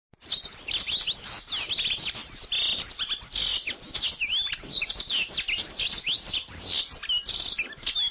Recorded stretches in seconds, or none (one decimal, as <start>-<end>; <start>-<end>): 0.0-8.1